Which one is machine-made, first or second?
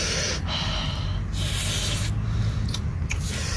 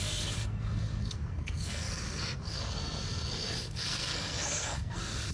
second